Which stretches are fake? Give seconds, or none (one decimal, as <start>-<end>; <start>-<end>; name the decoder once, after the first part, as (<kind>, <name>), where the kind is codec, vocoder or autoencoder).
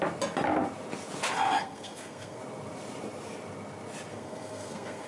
1.6-2.4 (codec, SNAC); 4.1-5.1